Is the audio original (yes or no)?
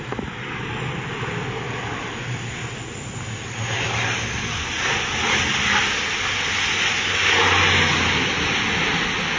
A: yes